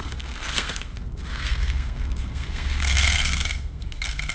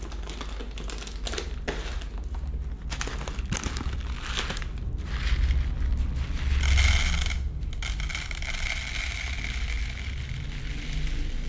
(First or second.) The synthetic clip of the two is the first